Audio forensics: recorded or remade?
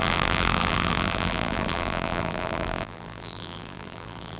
remade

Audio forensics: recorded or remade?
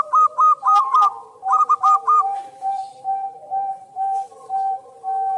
remade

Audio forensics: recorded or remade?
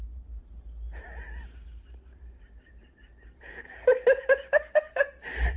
remade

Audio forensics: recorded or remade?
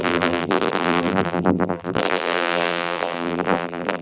remade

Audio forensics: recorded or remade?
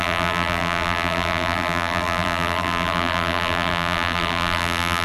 remade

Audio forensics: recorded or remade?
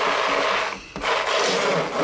recorded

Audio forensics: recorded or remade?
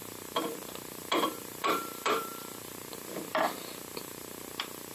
remade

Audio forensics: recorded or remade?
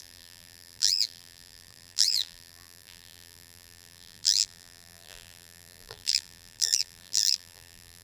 remade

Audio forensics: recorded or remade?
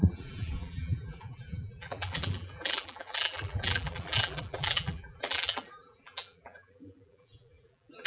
remade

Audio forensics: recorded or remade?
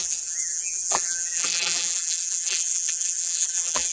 remade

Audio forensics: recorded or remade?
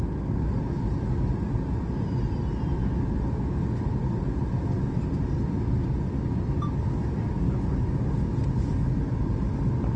recorded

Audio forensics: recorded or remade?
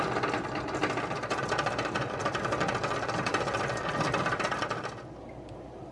recorded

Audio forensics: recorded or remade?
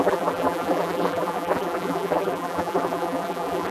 remade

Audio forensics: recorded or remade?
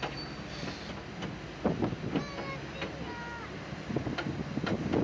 recorded